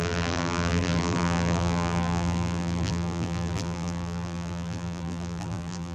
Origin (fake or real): fake